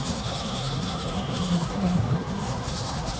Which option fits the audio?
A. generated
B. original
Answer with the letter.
A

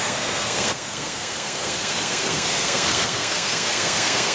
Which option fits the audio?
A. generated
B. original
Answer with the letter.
A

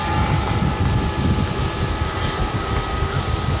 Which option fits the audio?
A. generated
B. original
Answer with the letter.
B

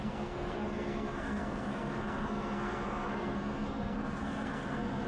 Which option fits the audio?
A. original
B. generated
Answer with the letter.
B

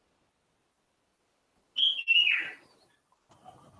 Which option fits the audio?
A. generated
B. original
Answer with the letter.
B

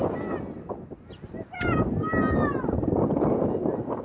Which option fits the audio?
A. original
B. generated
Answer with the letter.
A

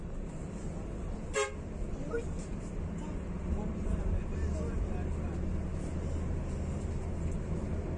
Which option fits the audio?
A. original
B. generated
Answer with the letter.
A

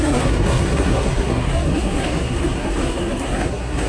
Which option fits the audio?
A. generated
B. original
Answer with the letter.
A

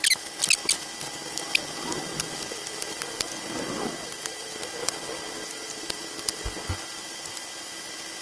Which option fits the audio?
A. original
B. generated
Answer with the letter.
A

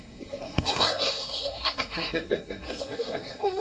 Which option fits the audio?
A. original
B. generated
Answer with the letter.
B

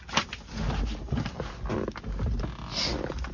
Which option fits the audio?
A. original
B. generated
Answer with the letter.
A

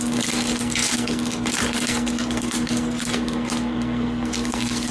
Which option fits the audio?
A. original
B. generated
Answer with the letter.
B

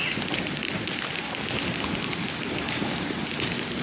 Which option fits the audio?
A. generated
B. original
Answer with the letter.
B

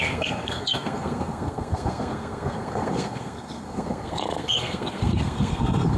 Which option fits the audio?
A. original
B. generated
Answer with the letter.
B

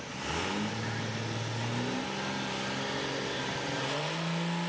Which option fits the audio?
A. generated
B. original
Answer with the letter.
B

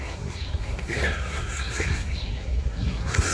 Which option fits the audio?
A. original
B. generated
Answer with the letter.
B